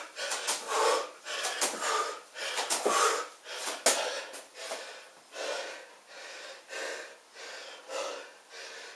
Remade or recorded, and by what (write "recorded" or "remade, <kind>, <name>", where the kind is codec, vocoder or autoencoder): recorded